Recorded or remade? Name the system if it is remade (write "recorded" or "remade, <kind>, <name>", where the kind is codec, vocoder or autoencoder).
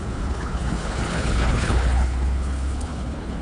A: remade, codec, HILCodec